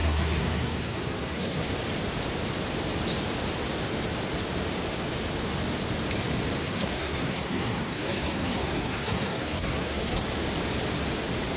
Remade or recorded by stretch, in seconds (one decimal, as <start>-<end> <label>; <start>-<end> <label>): 0.0-1.7 remade; 1.7-6.6 recorded; 6.6-10.2 remade; 10.2-11.6 recorded